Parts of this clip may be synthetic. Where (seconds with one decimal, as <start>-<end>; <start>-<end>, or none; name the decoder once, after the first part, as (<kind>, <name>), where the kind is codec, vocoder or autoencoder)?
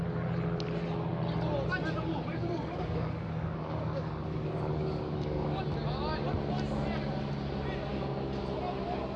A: 2.3-5.6 (codec, DAC); 7.9-8.4